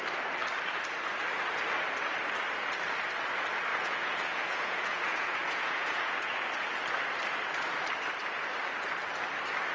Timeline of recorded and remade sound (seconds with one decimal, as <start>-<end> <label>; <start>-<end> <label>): 0.0-3.7 recorded; 3.7-6.4 remade; 6.4-9.7 recorded